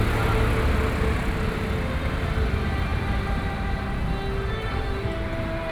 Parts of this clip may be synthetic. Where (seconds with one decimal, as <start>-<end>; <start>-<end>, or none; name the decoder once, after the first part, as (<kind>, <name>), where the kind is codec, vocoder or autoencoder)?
none